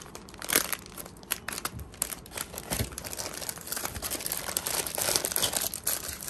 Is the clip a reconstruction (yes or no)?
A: yes